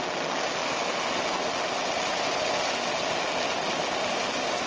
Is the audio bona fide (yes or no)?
yes